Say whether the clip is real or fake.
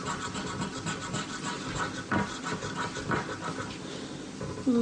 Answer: real